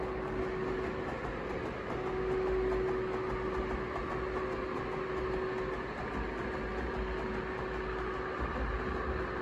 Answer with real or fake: real